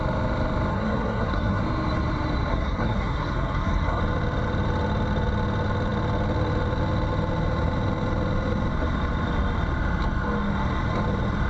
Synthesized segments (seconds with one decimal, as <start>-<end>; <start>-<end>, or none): 0.7-1.6; 2.5-4.0